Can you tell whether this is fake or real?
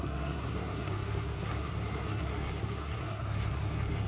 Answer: fake